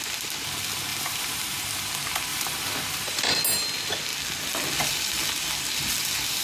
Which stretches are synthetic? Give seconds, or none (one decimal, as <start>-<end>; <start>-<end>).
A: 0.9-1.9; 2.3-3.4